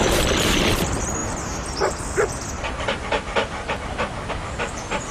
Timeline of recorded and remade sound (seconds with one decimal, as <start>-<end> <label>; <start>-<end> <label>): 0.0-1.2 remade; 1.2-4.3 recorded; 4.3-5.1 remade